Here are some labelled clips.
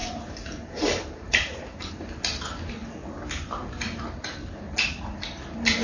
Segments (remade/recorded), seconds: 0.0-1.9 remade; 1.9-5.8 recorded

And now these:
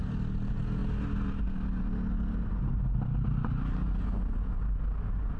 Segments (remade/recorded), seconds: 0.0-5.4 recorded

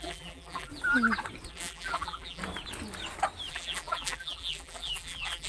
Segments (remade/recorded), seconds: 0.0-0.7 remade; 0.7-1.5 recorded; 1.5-2.4 remade; 2.4-3.5 recorded; 3.5-5.5 remade

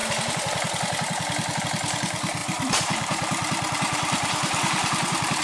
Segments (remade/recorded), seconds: 0.0-2.4 recorded; 2.4-5.4 remade

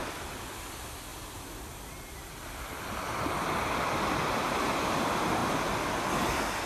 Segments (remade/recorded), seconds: 0.0-6.7 recorded